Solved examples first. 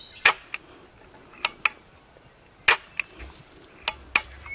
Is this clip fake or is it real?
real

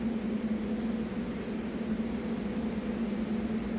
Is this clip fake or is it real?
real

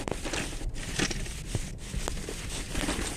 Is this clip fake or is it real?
real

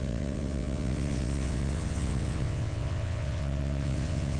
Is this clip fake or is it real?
fake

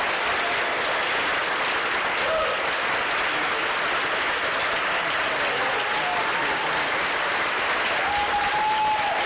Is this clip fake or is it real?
real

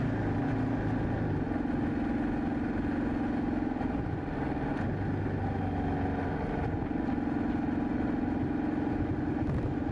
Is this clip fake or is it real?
real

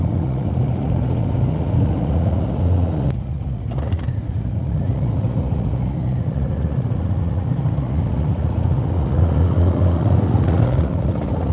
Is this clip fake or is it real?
fake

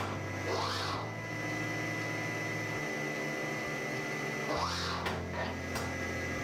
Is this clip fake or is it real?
real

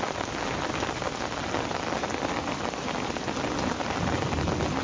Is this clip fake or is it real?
real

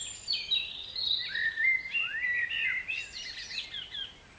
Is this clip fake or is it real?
real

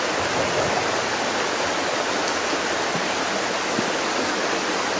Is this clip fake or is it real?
real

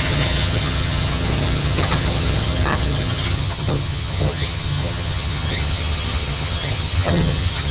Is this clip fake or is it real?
fake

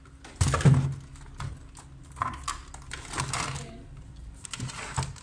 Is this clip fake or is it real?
real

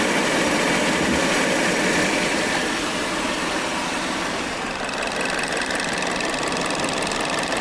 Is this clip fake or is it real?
real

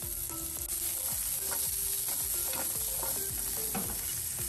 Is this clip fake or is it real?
real